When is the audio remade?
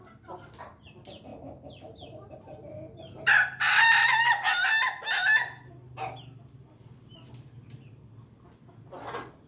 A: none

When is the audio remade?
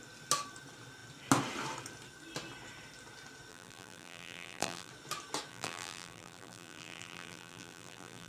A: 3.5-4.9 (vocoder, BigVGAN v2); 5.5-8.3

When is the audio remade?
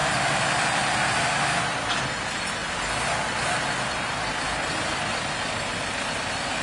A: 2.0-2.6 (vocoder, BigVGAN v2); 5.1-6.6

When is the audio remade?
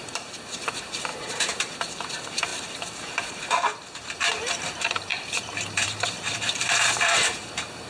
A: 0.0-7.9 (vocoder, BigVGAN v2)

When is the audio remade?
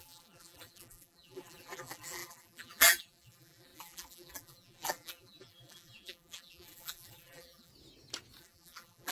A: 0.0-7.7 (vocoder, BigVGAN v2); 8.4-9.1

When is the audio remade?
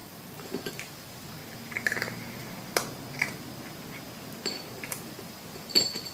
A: 0.0-1.4 (vocoder, BigVGAN v2); 4.8-6.1